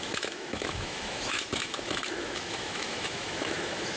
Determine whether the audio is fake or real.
fake